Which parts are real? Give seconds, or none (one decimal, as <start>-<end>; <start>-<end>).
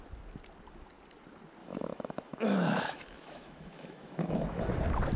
0.0-1.6; 4.7-5.2